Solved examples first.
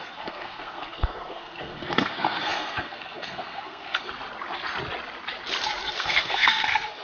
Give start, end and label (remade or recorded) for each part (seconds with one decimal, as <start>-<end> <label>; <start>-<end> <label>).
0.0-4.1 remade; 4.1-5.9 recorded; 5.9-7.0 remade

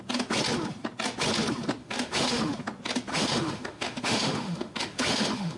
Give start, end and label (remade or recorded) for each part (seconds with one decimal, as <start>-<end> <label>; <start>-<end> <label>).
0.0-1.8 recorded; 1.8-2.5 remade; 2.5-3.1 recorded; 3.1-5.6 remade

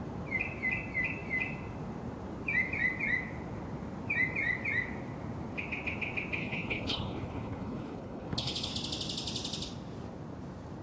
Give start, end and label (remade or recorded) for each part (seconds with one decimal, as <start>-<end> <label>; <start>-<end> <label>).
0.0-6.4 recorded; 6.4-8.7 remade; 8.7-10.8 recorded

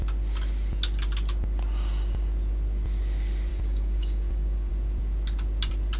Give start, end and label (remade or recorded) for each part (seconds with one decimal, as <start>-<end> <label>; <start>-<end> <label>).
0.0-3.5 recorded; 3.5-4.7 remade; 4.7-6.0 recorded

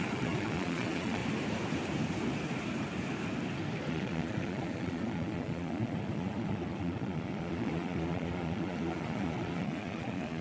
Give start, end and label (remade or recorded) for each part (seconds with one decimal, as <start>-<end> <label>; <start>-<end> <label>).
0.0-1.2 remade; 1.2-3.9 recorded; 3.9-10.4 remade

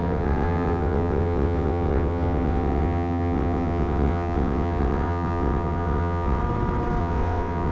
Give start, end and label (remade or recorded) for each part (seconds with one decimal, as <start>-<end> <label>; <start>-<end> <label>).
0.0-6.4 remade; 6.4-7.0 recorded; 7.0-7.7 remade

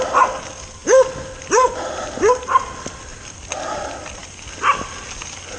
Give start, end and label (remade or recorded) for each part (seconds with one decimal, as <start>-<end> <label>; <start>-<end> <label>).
0.0-5.6 recorded